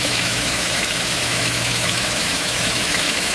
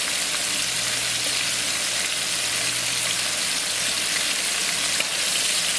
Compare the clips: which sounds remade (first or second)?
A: first